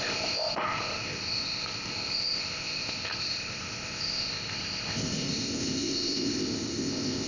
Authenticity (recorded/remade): remade